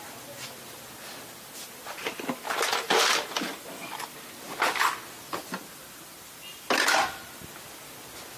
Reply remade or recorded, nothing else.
recorded